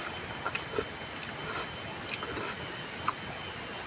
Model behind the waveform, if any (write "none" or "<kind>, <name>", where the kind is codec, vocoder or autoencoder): none